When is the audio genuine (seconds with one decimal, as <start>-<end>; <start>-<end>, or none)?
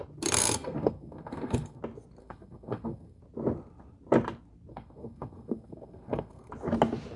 0.0-0.4; 1.8-2.2; 3.2-4.7; 6.5-7.2